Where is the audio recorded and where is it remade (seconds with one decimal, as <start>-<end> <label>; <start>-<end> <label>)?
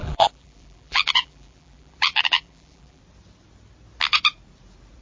0.0-3.0 remade; 3.0-5.0 recorded